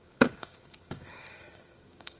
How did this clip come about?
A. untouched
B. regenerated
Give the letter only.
B